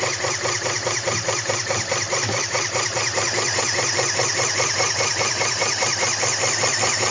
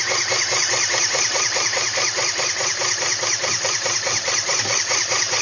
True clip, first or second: first